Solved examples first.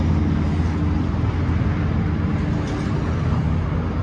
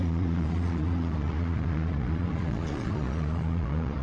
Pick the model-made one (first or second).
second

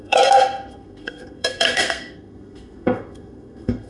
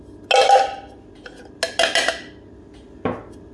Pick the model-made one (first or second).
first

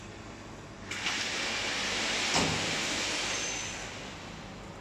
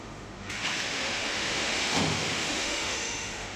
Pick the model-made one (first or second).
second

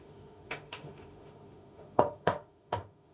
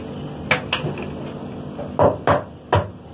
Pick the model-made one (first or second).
first